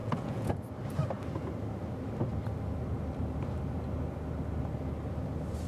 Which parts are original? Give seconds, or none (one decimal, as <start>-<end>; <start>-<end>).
0.5-5.7